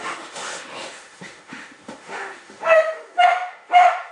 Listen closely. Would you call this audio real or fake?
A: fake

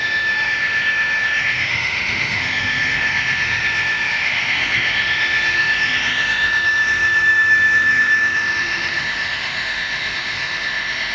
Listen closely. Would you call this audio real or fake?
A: fake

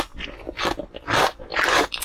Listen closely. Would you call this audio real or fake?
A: real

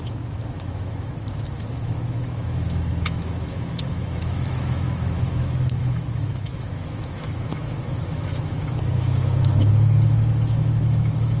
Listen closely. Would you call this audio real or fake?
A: fake